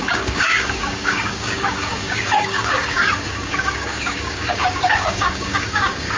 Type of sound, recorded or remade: remade